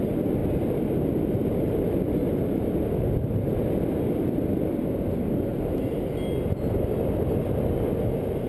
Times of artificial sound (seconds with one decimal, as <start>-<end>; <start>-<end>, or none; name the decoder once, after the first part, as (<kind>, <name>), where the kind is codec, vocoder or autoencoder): 5.5-6.1 (vocoder, BigVGAN v2)